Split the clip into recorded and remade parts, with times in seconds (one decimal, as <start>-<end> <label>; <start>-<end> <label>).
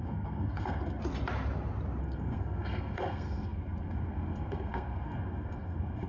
0.0-1.0 remade; 1.0-2.0 recorded; 2.0-6.1 remade